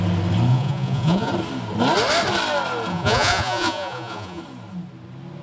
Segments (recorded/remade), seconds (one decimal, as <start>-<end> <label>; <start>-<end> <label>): 0.0-0.5 recorded; 0.5-1.3 remade; 1.3-2.9 recorded; 2.9-4.4 remade; 4.4-5.4 recorded